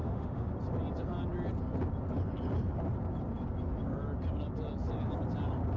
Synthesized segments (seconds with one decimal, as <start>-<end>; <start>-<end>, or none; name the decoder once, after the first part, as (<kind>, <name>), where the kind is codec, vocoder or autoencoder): 0.0-0.5 (autoencoder, DAC-VAE)